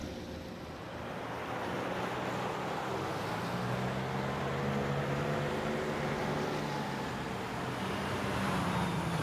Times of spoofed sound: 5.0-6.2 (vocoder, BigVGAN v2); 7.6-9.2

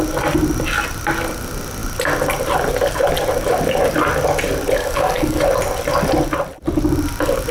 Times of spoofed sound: 4.8-5.4 (codec, DAC)

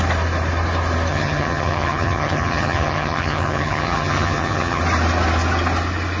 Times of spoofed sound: 1.1-4.8 (vocoder, HiFi-GAN)